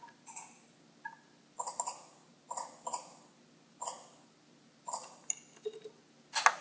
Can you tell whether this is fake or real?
real